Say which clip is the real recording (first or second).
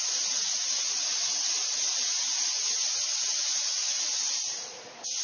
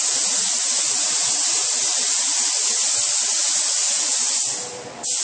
second